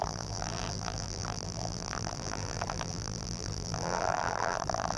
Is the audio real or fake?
fake